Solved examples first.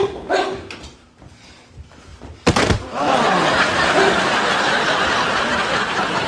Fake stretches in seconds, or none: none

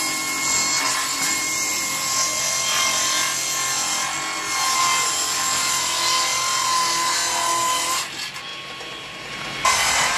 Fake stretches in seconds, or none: none

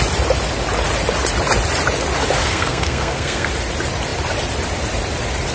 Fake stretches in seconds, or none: 2.4-3.5 (codec, SNAC)

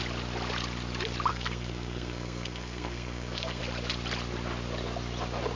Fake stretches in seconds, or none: 1.3-3.6 (codec, SNAC)